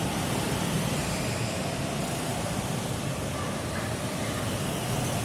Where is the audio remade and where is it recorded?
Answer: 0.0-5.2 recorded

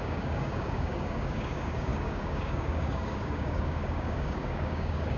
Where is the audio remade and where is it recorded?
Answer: 0.0-5.2 remade